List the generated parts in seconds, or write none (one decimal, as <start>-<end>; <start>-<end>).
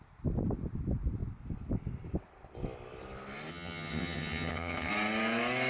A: 3.5-4.9